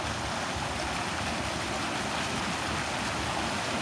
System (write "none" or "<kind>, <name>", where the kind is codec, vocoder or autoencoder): none